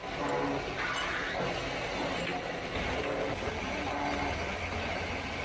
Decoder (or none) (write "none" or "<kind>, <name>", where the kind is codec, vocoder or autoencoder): none